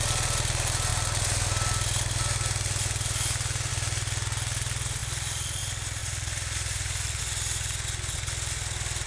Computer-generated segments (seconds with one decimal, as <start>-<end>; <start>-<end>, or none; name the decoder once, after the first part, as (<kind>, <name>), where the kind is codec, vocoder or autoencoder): 5.0-5.6 (vocoder, BigVGAN v2); 6.0-7.2